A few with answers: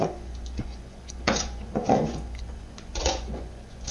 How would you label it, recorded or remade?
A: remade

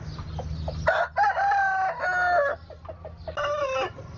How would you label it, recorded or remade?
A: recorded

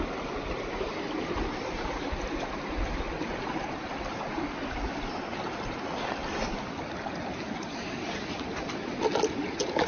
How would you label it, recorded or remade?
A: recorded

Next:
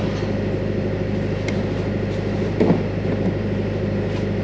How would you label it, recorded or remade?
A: recorded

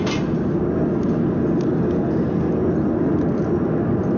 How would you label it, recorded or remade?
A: recorded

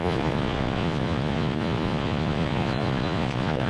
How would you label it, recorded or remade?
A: remade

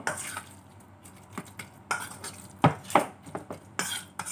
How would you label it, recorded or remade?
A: recorded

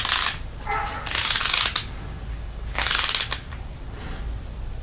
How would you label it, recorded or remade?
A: recorded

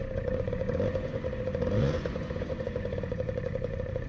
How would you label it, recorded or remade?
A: remade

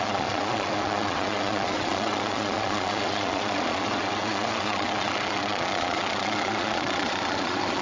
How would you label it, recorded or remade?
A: remade